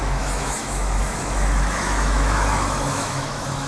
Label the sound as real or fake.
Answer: fake